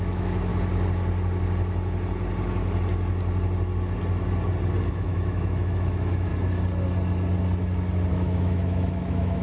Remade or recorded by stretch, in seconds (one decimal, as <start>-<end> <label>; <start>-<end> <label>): 0.0-0.5 remade; 0.5-4.9 recorded; 4.9-6.3 remade; 6.3-8.1 recorded; 8.1-9.4 remade